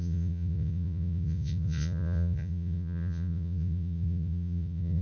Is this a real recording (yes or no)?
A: no